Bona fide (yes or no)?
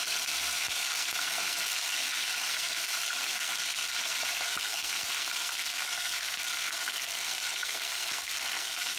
no